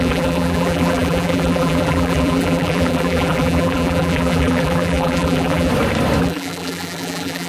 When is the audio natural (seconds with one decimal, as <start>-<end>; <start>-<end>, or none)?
5.7-6.2